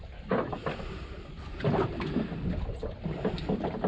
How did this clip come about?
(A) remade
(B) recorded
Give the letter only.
B